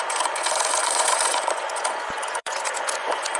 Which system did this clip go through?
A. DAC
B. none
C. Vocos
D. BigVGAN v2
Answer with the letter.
C